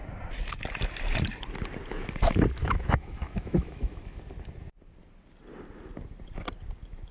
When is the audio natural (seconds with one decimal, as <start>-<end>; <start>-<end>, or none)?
0.0-2.6; 4.2-7.1